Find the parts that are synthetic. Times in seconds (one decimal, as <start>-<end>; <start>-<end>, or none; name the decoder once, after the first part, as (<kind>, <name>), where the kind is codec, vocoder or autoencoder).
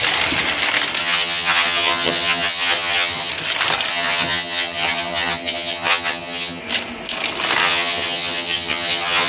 1.0-3.3 (vocoder, HiFi-GAN); 3.9-6.6; 7.6-9.3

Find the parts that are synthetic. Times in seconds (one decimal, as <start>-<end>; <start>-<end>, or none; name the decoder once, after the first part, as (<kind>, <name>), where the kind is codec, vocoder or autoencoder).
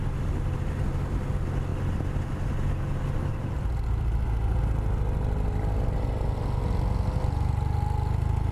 1.7-4.6 (vocoder, BigVGAN v2)